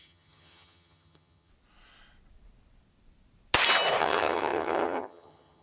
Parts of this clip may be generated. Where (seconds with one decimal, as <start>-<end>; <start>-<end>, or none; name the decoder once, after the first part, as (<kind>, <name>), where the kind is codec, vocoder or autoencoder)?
0.0-1.5 (vocoder, HiFi-GAN); 4.0-5.6